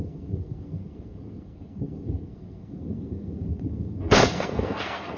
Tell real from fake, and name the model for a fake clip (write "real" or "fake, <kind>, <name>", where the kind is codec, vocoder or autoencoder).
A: fake, codec, SNAC